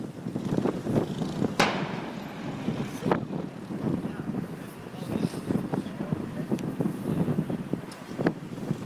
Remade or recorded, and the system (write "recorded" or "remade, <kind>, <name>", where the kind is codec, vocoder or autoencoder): recorded